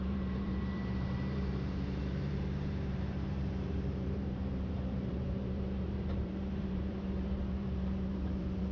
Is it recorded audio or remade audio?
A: remade